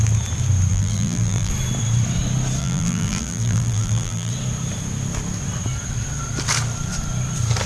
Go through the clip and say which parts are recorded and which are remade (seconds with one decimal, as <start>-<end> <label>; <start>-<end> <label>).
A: 0.0-0.7 recorded; 0.7-1.5 remade; 1.5-2.6 recorded; 2.6-4.3 remade; 4.3-7.7 recorded